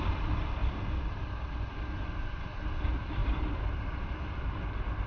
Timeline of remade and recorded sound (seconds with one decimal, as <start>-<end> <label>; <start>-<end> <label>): 0.0-0.6 recorded; 0.6-2.7 remade; 2.7-3.2 recorded; 3.2-3.8 remade; 3.8-5.1 recorded